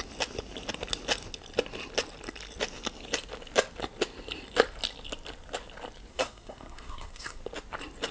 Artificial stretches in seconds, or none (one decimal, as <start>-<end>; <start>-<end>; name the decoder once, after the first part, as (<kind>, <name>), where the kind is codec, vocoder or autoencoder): 6.1-7.4 (codec, SNAC)